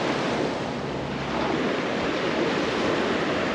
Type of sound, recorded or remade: recorded